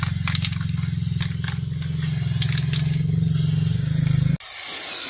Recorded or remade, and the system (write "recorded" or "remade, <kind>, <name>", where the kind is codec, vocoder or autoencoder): recorded